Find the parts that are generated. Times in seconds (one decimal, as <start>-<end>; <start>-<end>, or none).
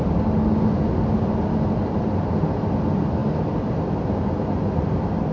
none